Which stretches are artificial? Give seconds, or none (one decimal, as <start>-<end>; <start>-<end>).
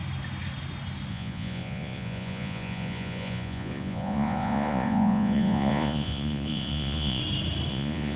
1.1-7.2; 7.7-8.2